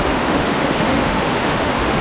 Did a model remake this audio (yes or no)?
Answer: yes